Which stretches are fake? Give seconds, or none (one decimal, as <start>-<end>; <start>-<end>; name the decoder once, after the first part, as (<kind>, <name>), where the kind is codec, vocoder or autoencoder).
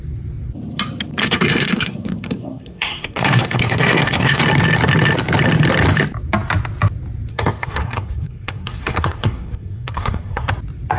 1.2-4.4 (codec, SNAC); 7.3-10.5